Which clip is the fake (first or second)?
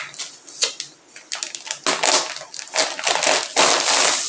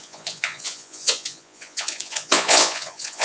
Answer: second